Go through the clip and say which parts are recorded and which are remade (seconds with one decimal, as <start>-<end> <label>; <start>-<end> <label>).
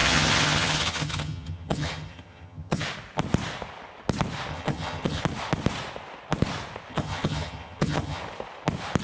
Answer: 0.0-2.8 remade; 2.8-4.5 recorded; 4.5-5.2 remade; 5.2-6.9 recorded; 6.9-8.2 remade; 8.2-9.0 recorded